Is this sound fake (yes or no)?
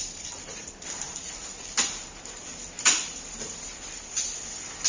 yes